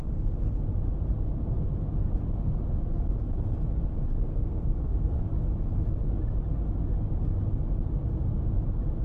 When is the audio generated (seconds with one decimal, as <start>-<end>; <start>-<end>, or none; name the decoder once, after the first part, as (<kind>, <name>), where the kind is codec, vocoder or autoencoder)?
4.3-5.2 (codec, SNAC)